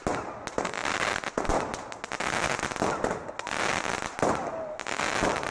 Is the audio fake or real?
real